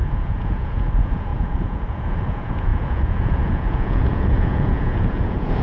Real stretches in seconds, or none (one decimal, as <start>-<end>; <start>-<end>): none